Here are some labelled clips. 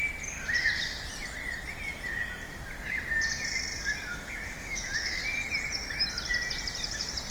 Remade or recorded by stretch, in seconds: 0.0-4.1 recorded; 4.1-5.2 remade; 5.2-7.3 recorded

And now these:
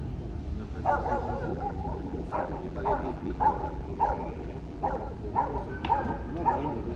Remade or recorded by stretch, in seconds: 0.0-1.5 recorded; 1.5-5.0 remade; 5.0-7.0 recorded

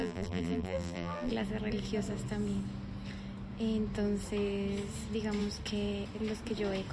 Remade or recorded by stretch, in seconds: 0.0-1.3 remade; 1.3-6.9 recorded

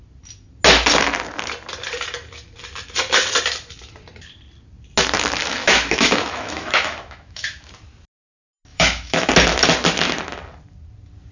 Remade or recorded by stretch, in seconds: 0.0-5.5 recorded; 5.5-7.7 remade; 7.7-8.7 recorded; 8.7-9.3 remade; 9.3-11.3 recorded

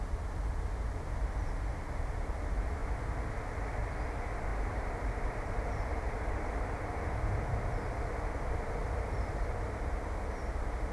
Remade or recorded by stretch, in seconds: 0.0-4.5 recorded; 4.5-6.6 remade; 6.6-8.8 recorded; 8.8-9.4 remade; 9.4-10.9 recorded

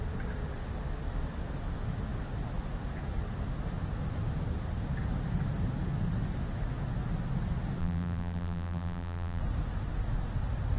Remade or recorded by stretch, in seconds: 0.0-7.8 recorded; 7.8-9.4 remade; 9.4-10.8 recorded